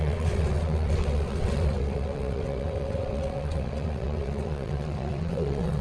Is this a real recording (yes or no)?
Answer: no